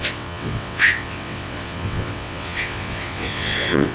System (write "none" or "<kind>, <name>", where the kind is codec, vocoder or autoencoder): vocoder, WaveNeXt